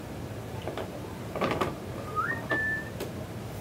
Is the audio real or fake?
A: fake